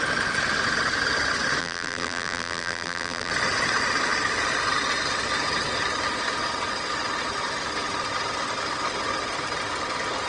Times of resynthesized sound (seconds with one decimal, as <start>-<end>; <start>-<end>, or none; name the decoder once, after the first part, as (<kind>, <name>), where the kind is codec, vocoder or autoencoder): 1.6-3.3 (vocoder, BigVGAN v2)